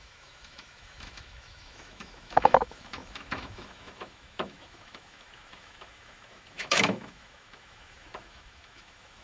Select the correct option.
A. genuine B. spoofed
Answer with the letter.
B